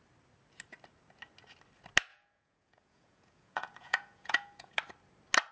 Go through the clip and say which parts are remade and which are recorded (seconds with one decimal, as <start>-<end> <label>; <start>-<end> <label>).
0.0-2.1 recorded; 2.1-4.7 remade; 4.7-5.5 recorded